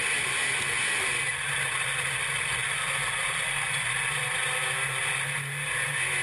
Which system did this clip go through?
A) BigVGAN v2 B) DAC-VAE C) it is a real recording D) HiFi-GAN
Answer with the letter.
C